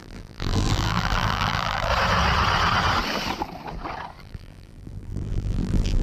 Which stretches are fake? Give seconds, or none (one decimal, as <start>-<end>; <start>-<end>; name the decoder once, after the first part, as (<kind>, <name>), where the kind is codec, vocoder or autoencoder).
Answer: 0.0-1.9 (vocoder, BigVGAN v2); 4.2-6.0